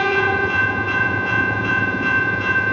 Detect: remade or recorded remade